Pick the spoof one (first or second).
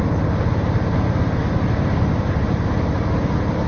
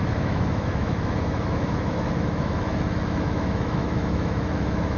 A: second